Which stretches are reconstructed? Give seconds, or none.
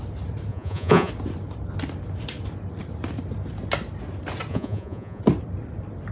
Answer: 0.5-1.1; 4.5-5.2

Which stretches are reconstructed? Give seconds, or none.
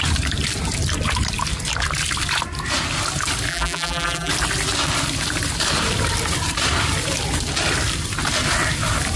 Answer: 3.5-4.3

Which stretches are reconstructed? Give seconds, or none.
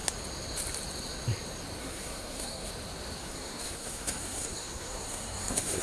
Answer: 1.8-2.7; 3.2-5.8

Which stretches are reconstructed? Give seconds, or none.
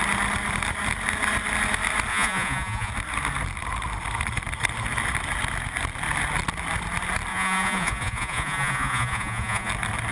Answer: 2.1-2.9; 7.3-9.7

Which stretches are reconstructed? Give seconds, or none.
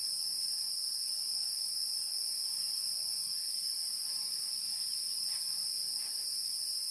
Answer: none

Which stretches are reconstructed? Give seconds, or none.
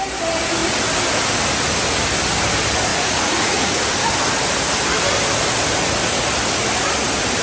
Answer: 2.9-3.8